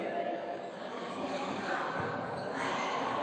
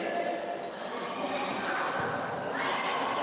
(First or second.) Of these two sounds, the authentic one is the second